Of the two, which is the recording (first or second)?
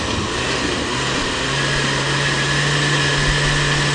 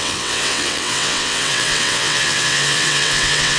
first